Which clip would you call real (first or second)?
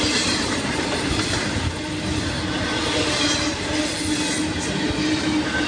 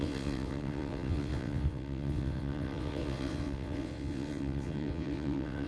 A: first